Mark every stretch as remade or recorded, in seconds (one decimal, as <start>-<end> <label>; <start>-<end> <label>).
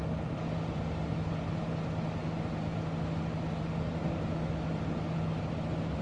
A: 0.0-6.0 recorded